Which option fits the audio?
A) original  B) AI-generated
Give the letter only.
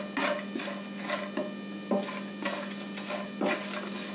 A